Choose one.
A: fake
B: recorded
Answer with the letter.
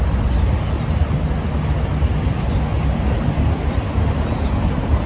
B